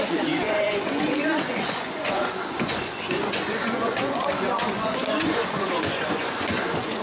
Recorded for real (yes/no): no